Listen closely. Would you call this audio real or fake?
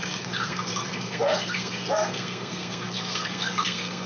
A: fake